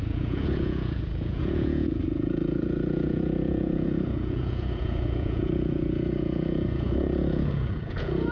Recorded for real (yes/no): no